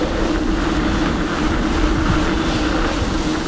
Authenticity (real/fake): real